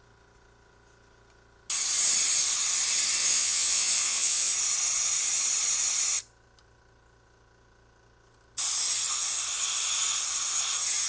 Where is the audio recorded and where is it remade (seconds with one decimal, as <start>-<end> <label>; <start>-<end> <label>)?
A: 0.0-3.2 recorded; 3.2-4.5 remade; 4.5-11.1 recorded